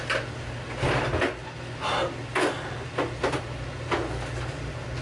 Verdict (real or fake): real